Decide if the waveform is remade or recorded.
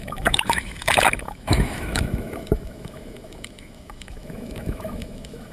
remade